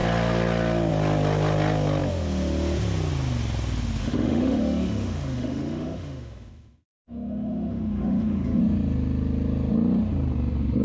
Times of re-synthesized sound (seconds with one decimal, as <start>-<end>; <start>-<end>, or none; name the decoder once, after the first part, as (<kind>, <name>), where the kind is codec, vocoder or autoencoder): 4.0-8.6 (autoencoder, DAC-VAE)